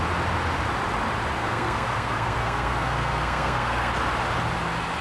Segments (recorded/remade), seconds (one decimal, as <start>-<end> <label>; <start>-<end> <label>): 0.0-1.4 recorded; 1.4-3.9 remade; 3.9-5.0 recorded